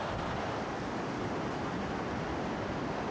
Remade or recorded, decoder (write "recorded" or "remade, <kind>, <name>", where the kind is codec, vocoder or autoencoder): recorded